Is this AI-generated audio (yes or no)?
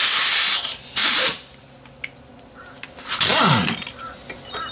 no